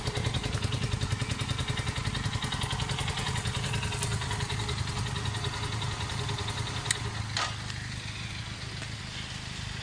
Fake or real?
real